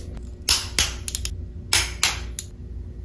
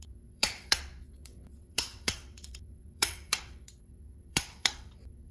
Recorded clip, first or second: first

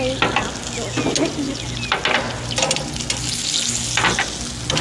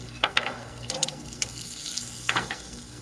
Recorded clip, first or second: first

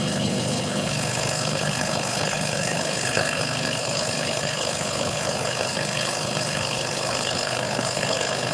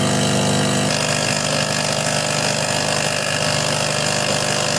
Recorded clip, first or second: second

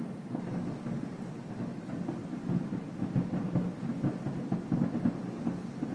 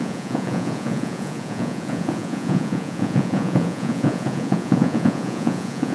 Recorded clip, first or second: first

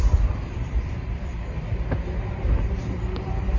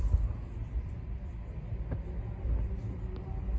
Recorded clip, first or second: second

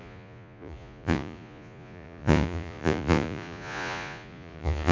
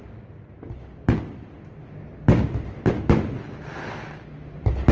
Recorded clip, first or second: second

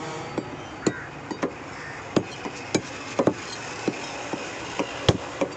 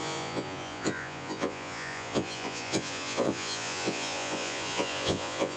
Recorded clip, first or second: first